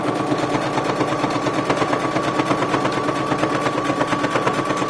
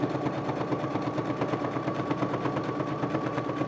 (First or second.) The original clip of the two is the first